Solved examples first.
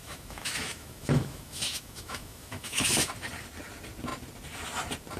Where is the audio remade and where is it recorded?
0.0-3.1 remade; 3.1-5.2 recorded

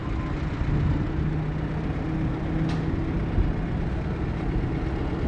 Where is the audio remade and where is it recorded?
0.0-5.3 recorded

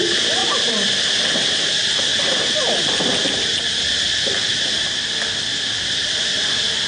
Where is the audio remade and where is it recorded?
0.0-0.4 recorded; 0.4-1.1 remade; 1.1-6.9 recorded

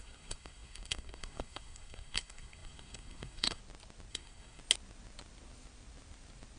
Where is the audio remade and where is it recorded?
0.0-3.6 remade; 3.6-4.1 recorded; 4.1-4.6 remade; 4.6-6.6 recorded

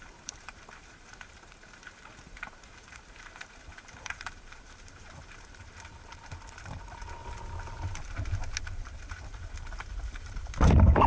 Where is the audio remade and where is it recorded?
0.0-7.2 remade; 7.2-8.6 recorded; 8.6-11.1 remade